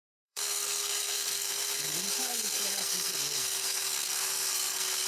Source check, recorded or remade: remade